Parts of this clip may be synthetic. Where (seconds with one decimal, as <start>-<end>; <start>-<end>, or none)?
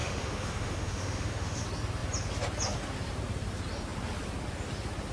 0.0-1.6